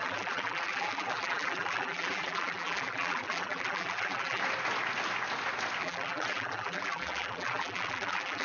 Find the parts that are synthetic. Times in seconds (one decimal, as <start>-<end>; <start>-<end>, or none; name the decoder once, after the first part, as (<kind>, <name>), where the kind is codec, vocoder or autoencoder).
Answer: 0.0-4.4 (vocoder, BigVGAN v2); 5.8-8.4